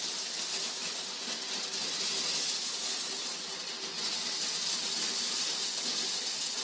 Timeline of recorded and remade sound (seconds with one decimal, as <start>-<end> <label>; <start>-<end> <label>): 0.0-6.6 recorded